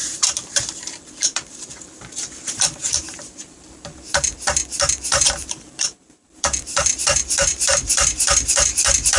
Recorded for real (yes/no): no